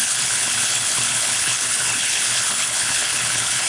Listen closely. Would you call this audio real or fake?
fake